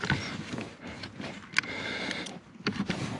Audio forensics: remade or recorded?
recorded